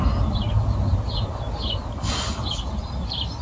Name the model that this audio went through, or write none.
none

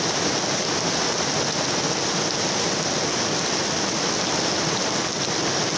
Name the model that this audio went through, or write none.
none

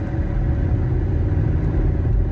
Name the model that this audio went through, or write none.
none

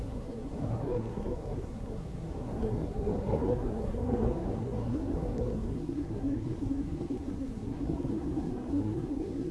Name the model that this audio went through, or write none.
codec, SNAC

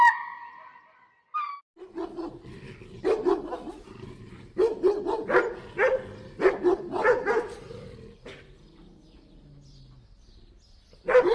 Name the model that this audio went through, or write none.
none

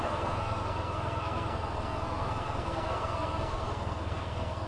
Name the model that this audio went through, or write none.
codec, SNAC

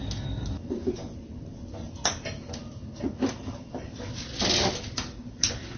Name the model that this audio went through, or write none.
none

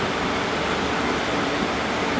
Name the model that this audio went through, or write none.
none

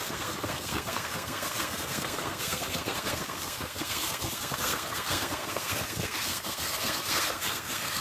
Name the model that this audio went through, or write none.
codec, SNAC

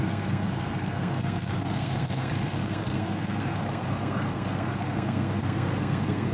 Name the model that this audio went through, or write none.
codec, SNAC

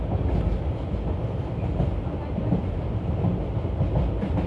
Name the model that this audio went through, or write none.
none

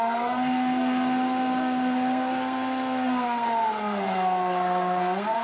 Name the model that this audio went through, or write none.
codec, SNAC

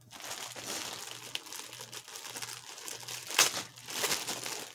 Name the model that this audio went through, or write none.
none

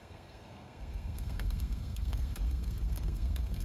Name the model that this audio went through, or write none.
codec, SNAC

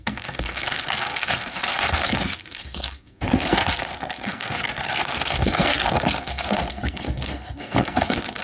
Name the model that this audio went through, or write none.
codec, SNAC